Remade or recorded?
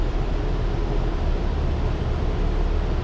recorded